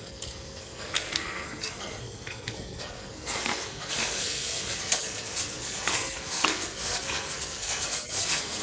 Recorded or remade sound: remade